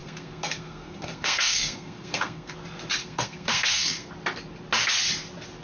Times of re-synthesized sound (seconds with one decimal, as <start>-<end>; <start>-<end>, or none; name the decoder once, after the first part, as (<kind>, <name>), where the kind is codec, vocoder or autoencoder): 0.0-2.5 (codec, SNAC); 3.0-4.1